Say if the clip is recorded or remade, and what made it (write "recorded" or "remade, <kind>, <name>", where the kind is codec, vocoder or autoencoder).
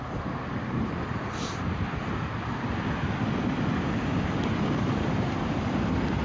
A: recorded